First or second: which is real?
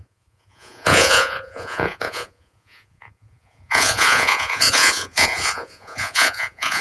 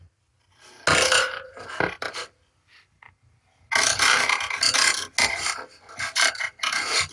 second